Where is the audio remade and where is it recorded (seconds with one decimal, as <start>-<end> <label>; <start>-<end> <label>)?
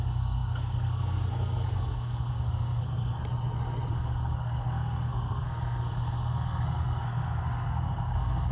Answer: 0.0-3.2 remade; 3.2-3.9 recorded; 3.9-8.5 remade